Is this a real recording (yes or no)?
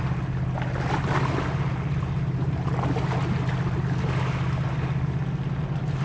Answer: yes